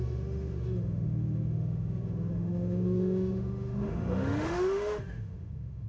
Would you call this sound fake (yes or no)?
yes